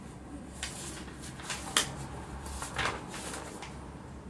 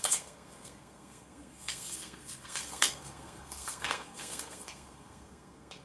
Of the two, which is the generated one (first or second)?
second